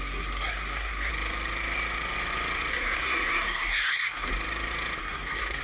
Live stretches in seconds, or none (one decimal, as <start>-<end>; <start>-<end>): 1.1-2.7; 4.3-5.0